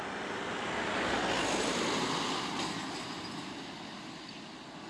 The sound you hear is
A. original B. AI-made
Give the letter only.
A